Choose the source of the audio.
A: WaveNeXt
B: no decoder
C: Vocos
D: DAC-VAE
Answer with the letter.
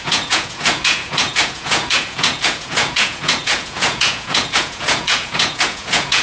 C